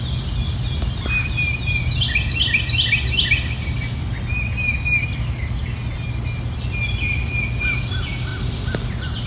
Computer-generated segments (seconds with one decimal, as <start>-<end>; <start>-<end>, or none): none